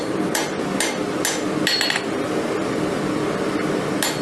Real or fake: real